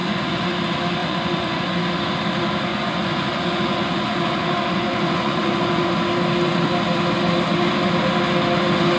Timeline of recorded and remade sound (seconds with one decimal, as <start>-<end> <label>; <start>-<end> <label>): 0.0-0.5 remade; 0.5-1.0 recorded; 1.0-1.8 remade; 1.8-2.7 recorded; 2.7-5.9 remade; 5.9-9.0 recorded